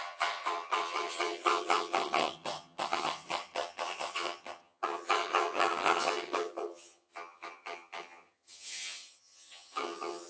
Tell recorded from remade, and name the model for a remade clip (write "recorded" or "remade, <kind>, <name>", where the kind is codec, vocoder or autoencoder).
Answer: remade, vocoder, HiFi-GAN